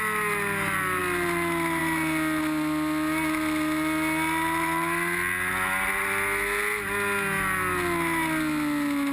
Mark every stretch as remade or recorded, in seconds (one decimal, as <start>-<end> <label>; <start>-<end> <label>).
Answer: 0.0-9.1 recorded